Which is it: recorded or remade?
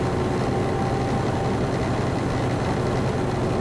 recorded